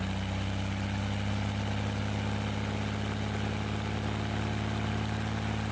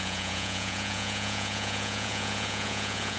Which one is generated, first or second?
second